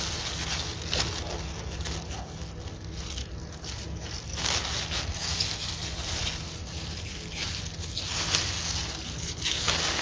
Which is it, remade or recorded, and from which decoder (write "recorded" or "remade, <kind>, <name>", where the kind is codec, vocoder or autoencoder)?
recorded